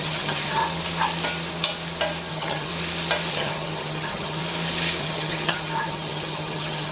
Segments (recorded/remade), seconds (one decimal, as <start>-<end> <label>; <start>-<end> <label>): 0.0-0.6 remade; 0.6-2.3 recorded; 2.3-2.7 remade; 2.7-3.3 recorded; 3.3-4.4 remade; 4.4-5.0 recorded; 5.0-6.9 remade

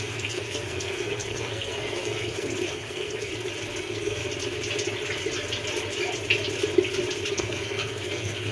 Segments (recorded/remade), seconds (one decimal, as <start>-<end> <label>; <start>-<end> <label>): 0.0-3.3 remade; 3.3-3.8 recorded; 3.8-4.2 remade; 4.2-7.3 recorded; 7.3-8.5 remade

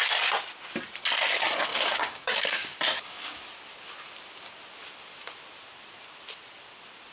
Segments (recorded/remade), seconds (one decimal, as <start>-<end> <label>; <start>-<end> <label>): 0.0-1.7 recorded; 1.7-3.4 remade; 3.4-7.1 recorded

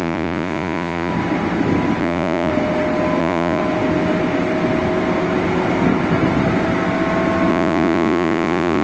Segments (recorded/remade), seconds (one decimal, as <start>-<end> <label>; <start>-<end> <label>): 0.0-1.1 remade; 1.1-2.0 recorded; 2.0-2.5 remade; 2.5-3.2 recorded; 3.2-3.6 remade; 3.6-7.5 recorded; 7.5-8.8 remade